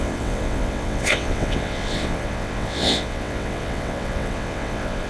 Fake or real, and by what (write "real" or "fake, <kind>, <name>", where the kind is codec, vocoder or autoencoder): fake, vocoder, WaveNeXt